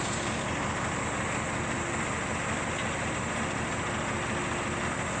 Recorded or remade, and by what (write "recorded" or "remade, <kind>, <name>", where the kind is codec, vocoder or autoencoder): recorded